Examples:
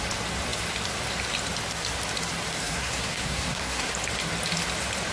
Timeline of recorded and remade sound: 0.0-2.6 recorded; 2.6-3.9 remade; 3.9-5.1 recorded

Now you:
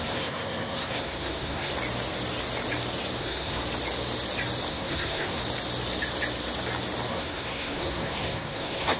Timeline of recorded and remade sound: 0.0-1.7 remade; 1.7-3.2 recorded; 3.2-3.6 remade; 3.6-4.7 recorded; 4.7-5.4 remade; 5.4-7.1 recorded; 7.1-9.0 remade

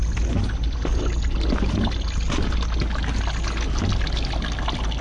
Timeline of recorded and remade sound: 0.0-5.0 recorded